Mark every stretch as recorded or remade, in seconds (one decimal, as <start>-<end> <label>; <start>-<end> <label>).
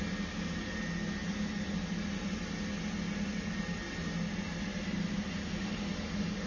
0.0-6.5 recorded